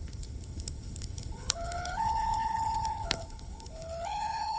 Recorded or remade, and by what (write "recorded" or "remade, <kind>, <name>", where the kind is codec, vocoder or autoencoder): remade, codec, HILCodec